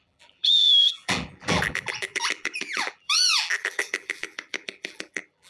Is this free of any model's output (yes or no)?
no